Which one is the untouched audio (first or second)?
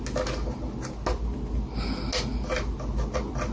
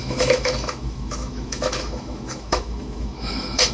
first